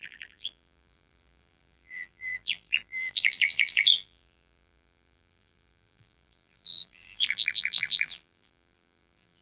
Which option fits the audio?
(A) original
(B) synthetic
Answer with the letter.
B